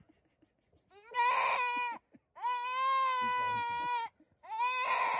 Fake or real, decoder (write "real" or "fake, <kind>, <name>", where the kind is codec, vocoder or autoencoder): real